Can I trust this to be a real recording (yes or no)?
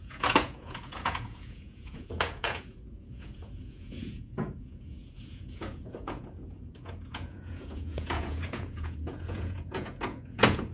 no